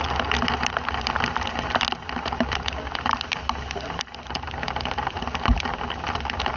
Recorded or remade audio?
recorded